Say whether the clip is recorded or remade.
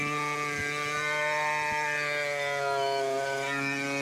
recorded